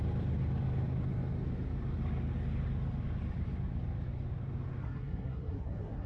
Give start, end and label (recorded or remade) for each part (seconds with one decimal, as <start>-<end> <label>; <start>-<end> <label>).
0.0-4.8 recorded; 4.8-6.1 remade